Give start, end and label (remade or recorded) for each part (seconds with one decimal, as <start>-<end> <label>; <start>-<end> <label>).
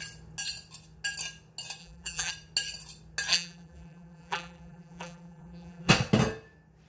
0.0-1.8 recorded; 1.8-2.3 remade; 2.3-3.3 recorded; 3.3-5.9 remade; 5.9-6.9 recorded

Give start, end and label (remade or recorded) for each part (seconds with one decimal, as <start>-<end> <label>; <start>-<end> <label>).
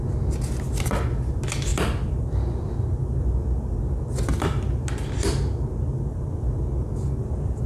0.0-7.7 recorded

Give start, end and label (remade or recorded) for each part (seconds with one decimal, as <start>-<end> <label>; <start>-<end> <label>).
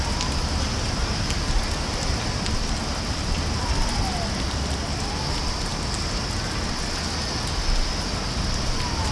0.0-9.1 recorded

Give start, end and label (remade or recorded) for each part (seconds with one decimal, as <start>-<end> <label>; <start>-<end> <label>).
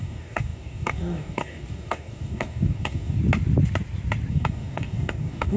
0.0-3.2 remade; 3.2-4.3 recorded; 4.3-5.6 remade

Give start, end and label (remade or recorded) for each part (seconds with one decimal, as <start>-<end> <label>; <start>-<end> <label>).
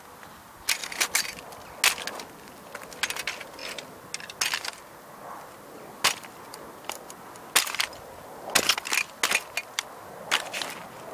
0.0-11.1 recorded